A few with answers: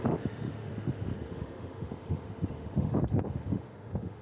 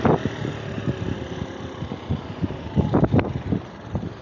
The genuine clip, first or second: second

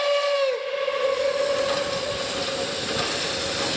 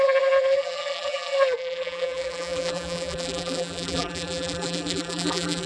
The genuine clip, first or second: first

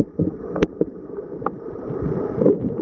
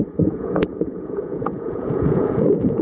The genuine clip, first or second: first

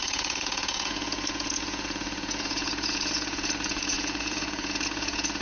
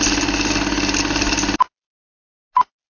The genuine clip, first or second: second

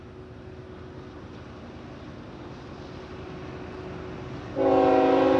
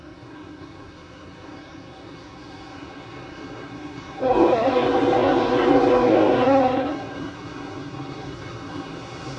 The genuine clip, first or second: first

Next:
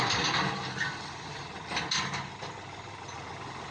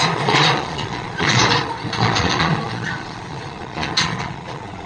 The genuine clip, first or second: first